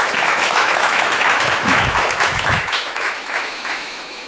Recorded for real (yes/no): no